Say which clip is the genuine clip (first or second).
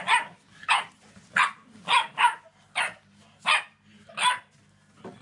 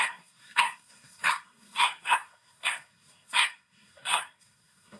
first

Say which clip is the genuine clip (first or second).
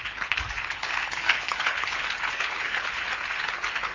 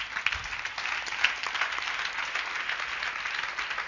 second